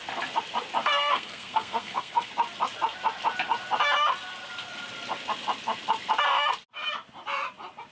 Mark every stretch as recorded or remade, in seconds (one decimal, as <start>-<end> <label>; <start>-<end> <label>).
0.0-0.8 recorded; 0.8-2.3 remade; 2.3-7.9 recorded